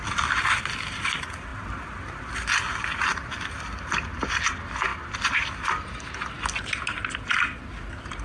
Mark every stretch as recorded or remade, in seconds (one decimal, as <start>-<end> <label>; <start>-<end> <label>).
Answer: 0.0-1.5 recorded; 1.5-3.9 remade; 3.9-4.9 recorded; 4.9-5.9 remade; 5.9-8.2 recorded